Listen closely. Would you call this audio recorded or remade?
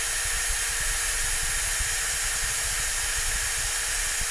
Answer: recorded